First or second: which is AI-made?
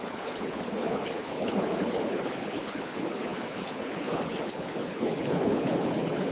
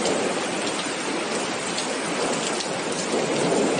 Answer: first